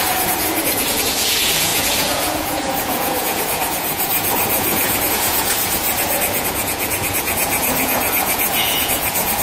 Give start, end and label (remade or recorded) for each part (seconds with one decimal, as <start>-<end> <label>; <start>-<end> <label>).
0.0-9.4 remade